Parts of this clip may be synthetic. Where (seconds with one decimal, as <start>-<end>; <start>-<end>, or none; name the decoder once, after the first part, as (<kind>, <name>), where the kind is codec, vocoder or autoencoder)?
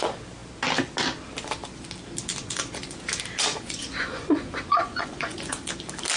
2.4-3.0 (vocoder, Vocos); 3.5-5.7